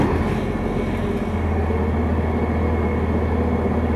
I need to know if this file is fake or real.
real